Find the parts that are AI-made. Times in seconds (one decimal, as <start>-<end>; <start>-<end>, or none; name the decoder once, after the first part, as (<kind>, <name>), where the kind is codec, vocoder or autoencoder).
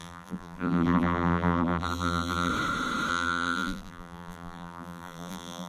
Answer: 0.0-2.5 (vocoder, BigVGAN v2); 3.1-5.7